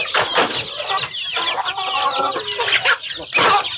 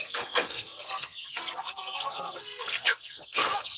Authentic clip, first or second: first